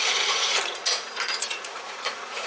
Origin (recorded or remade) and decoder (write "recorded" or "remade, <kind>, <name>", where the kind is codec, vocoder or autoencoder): remade, vocoder, Vocos